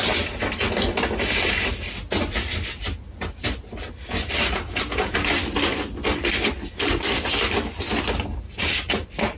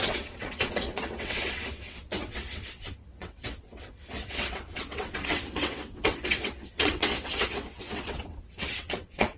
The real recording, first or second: first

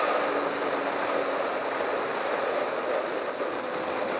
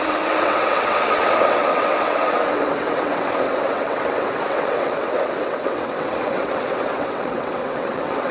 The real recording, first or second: first